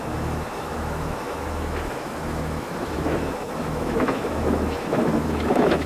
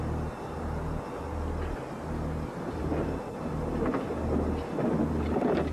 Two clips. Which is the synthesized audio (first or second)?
first